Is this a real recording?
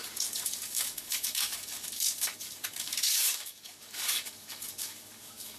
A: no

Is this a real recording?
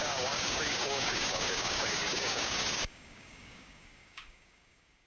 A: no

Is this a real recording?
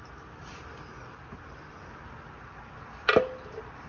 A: yes